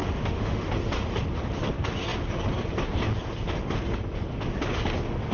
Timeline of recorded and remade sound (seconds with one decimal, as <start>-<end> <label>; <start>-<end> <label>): 0.0-0.7 remade; 0.7-5.3 recorded